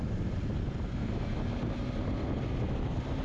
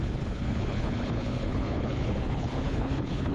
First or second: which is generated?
second